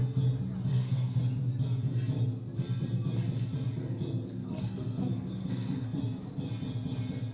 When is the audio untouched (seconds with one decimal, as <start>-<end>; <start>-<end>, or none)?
0.0-0.7; 1.2-4.4; 6.0-7.3